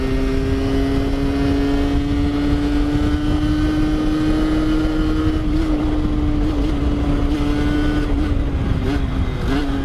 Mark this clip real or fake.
real